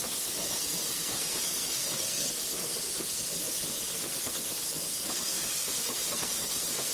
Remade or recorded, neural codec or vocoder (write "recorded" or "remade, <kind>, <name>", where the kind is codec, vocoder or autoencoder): remade, codec, SNAC